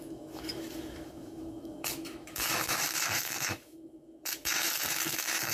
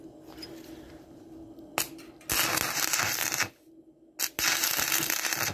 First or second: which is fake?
first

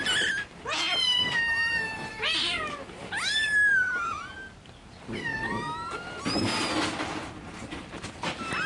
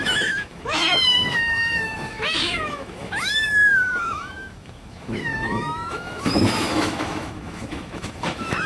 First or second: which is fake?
second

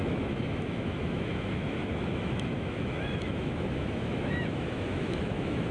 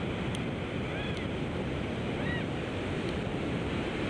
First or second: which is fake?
first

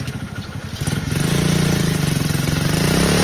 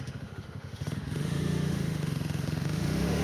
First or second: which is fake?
second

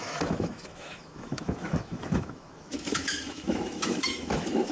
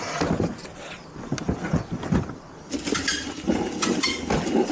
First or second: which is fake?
first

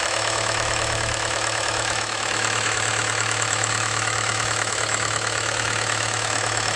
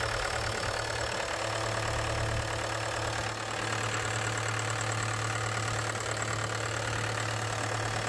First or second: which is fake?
first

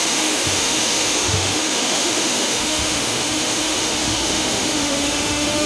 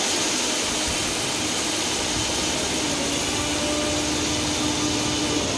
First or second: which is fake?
first